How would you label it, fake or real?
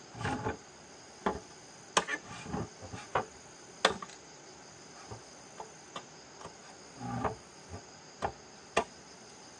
real